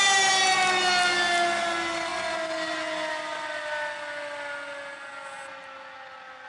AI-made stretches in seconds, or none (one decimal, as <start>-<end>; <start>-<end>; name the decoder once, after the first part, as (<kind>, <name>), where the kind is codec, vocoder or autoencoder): none